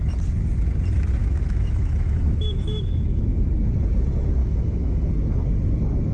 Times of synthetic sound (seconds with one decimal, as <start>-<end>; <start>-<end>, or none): 1.2-3.5; 4.4-5.1